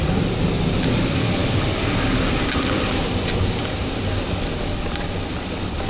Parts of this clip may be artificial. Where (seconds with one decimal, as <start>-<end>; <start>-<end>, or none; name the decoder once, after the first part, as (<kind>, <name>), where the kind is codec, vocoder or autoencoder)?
none